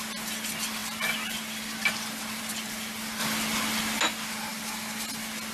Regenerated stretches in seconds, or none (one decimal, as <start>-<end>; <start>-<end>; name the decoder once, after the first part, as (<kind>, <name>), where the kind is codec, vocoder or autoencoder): 0.8-2.4 (vocoder, BigVGAN v2); 3.2-4.0